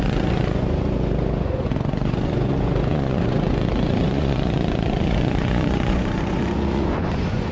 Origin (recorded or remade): remade